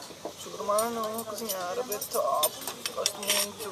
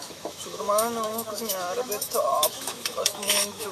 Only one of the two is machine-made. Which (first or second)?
second